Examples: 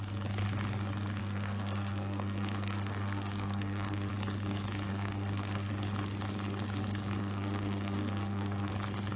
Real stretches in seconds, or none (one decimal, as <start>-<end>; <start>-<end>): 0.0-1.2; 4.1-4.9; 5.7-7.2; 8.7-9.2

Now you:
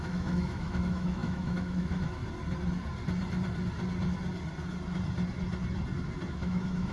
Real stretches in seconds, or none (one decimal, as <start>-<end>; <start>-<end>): 2.2-6.3

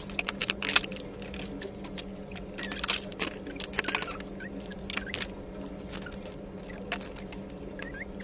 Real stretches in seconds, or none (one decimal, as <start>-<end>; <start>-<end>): 0.0-8.2